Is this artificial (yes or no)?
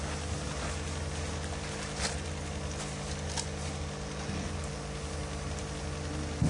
no